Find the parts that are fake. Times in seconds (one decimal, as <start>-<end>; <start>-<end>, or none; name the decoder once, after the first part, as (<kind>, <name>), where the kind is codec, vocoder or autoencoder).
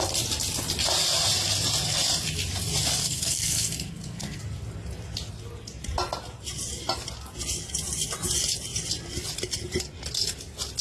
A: 3.0-4.4 (codec, SNAC)